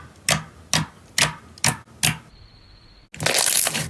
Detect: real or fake real